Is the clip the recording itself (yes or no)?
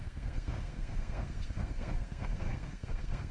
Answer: no